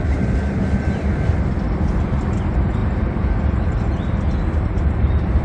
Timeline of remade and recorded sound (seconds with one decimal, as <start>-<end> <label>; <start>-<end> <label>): 0.0-5.4 recorded